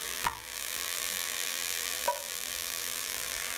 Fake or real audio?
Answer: fake